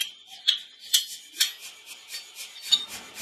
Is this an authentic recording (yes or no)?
yes